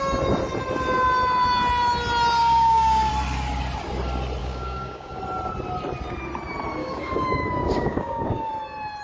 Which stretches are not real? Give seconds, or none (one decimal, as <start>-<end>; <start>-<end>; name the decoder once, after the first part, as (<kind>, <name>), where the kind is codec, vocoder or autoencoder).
2.4-3.1 (codec, DAC); 4.4-5.2; 6.8-8.5